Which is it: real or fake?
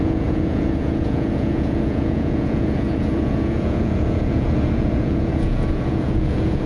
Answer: fake